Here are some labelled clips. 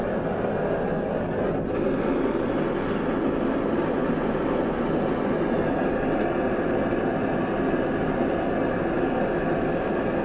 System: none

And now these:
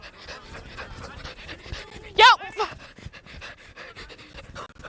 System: none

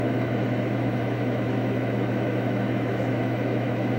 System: autoencoder, DAC-VAE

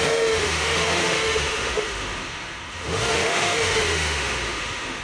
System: autoencoder, DAC-VAE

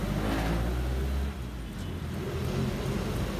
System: none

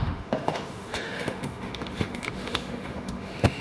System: autoencoder, DAC-VAE